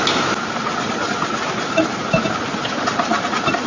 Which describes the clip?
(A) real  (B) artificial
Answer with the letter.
A